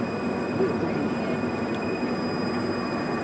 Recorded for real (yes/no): yes